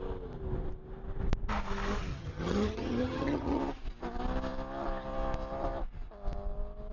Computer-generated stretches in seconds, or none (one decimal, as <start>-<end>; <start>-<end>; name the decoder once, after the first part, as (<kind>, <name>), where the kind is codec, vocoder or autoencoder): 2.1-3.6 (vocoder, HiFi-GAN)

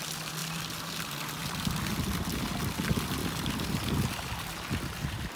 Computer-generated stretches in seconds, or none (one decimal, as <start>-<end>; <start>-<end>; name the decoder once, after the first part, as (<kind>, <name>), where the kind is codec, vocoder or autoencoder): 1.4-2.5 (vocoder, BigVGAN v2); 3.2-4.1

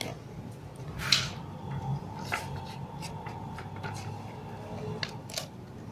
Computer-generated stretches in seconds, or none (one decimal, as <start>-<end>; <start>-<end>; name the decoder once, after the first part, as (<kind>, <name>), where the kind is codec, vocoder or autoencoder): 1.9-4.8 (vocoder, BigVGAN v2)

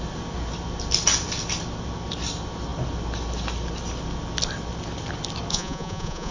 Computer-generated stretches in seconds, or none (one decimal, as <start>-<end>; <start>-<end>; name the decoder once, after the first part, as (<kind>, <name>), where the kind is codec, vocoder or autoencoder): 5.5-6.3 (vocoder, Vocos)

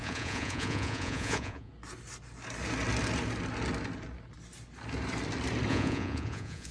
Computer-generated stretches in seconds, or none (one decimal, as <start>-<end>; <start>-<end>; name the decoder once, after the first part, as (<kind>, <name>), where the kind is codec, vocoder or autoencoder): 0.0-1.7 (vocoder, Vocos); 5.7-6.7